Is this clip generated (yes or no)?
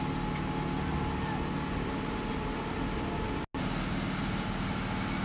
no